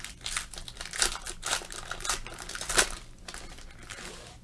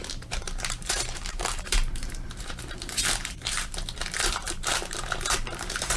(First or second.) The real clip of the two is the first